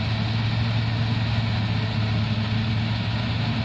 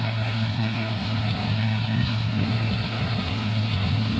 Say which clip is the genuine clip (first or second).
first